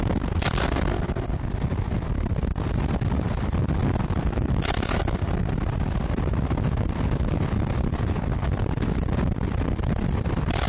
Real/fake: real